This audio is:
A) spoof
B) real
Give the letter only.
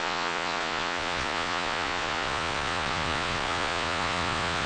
A